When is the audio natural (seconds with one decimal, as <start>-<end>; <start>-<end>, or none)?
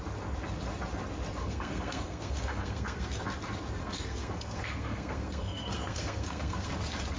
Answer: 0.0-1.4; 3.2-3.8; 6.7-7.2